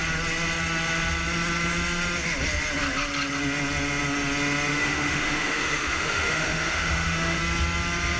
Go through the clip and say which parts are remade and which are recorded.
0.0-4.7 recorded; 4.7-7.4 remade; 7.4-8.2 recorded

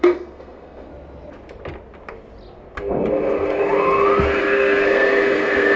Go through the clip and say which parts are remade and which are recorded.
0.0-0.9 remade; 0.9-4.4 recorded; 4.4-5.8 remade

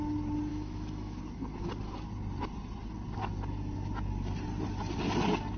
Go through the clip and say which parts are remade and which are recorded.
0.0-0.5 recorded; 0.5-1.2 remade; 1.2-5.6 recorded

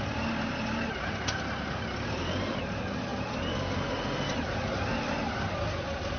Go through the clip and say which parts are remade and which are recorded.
0.0-6.2 recorded

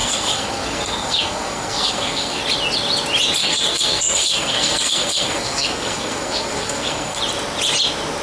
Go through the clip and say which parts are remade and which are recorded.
0.0-2.4 remade; 2.4-3.4 recorded; 3.4-7.2 remade; 7.2-8.2 recorded

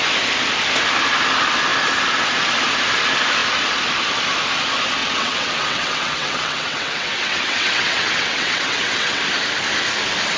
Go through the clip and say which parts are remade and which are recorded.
0.0-5.0 recorded; 5.0-9.2 remade; 9.2-10.4 recorded